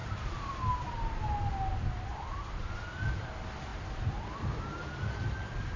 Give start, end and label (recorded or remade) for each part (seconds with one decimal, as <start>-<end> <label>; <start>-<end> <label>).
0.0-0.6 remade; 0.6-1.7 recorded; 1.7-3.3 remade; 3.3-3.7 recorded; 3.7-5.8 remade

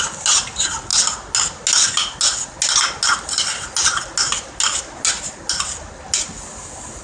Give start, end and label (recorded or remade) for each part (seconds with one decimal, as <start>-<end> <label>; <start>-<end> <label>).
0.0-7.0 recorded

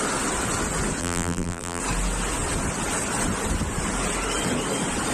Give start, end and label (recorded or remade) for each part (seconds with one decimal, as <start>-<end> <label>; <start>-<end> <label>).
0.0-1.0 recorded; 1.0-1.8 remade; 1.8-5.1 recorded

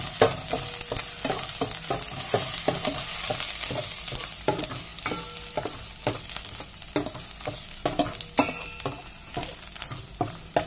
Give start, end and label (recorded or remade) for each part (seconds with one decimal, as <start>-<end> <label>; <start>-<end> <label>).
0.0-10.7 recorded

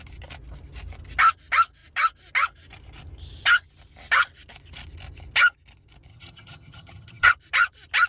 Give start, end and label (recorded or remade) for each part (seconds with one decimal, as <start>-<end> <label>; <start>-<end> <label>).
0.0-6.1 recorded; 6.1-7.3 remade; 7.3-8.1 recorded

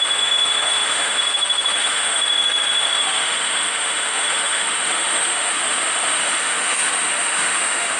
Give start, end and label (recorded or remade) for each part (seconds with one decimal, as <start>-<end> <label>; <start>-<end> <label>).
0.0-8.0 remade

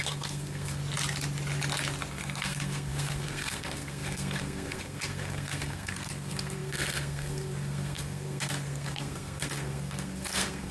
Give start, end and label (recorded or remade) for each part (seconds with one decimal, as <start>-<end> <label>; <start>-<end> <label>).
0.0-0.8 remade; 0.8-2.1 recorded; 2.1-10.7 remade

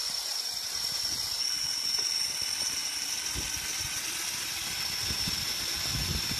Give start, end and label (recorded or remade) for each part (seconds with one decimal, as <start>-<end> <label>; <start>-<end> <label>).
0.0-6.4 recorded